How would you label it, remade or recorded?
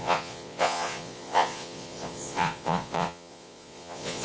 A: remade